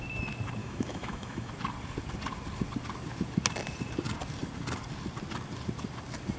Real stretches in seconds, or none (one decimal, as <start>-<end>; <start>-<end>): 0.0-0.6; 1.5-6.4

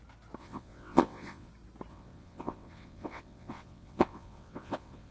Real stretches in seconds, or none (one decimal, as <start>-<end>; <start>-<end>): 0.0-0.4; 1.5-1.9

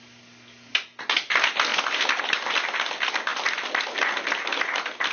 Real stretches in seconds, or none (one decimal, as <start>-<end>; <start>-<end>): 0.0-5.1

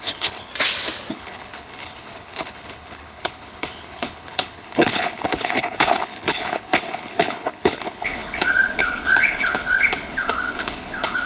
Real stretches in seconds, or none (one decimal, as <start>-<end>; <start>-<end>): 0.5-1.1

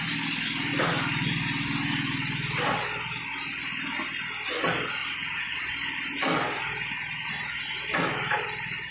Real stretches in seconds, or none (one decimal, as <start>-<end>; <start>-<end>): 0.0-5.0; 5.6-8.9

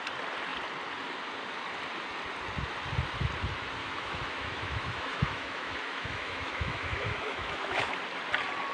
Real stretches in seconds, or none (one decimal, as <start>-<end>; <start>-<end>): 0.0-3.8; 7.9-8.7

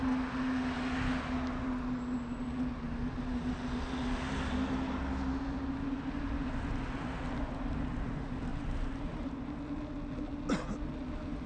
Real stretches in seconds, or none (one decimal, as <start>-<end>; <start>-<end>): 0.0-8.5; 9.3-11.5